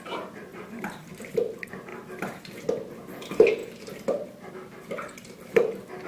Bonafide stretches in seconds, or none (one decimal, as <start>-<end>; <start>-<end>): 0.0-0.5; 1.1-1.9; 2.4-6.1